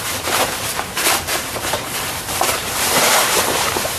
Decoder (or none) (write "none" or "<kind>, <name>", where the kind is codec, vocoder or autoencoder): vocoder, BigVGAN v2